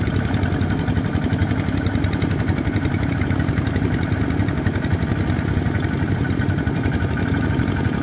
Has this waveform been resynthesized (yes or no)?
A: no